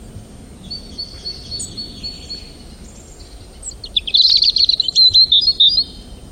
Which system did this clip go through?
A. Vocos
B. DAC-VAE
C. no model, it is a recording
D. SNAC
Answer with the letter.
C